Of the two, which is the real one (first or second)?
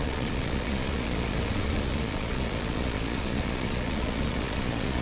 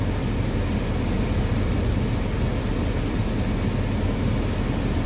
second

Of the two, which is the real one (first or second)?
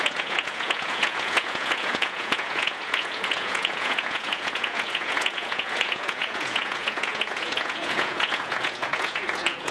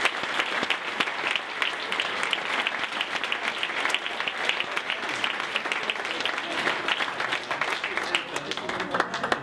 second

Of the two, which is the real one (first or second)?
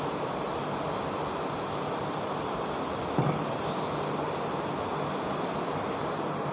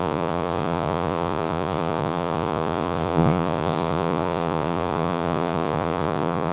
first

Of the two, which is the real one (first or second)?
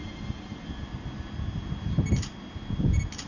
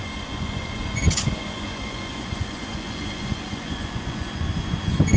first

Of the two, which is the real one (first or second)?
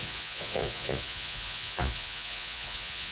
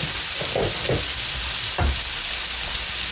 second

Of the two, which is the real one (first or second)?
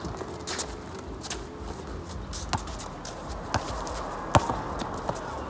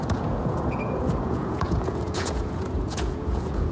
first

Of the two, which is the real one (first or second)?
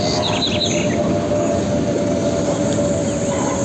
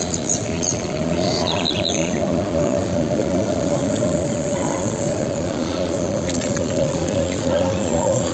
first